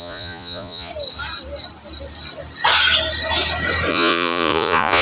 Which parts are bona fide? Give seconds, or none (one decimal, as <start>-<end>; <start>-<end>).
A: 0.9-3.9